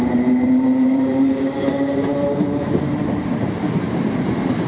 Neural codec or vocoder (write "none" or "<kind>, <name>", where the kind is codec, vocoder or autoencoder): vocoder, BigVGAN v2